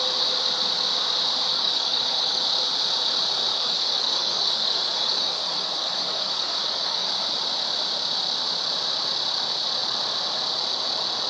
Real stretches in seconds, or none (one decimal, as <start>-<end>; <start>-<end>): 0.0-1.5; 2.4-3.5; 7.1-11.3